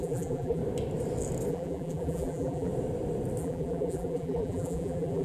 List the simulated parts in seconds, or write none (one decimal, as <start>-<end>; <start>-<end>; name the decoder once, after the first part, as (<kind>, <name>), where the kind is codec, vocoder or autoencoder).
0.0-0.6 (vocoder, BigVGAN v2); 1.5-2.7; 3.4-5.2